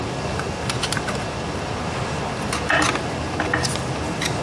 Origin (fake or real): real